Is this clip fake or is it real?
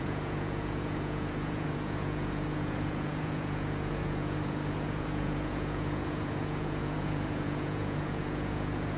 fake